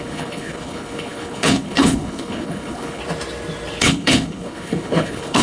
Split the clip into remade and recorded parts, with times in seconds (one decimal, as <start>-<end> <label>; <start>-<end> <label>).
0.0-3.0 remade; 3.0-3.8 recorded; 3.8-5.4 remade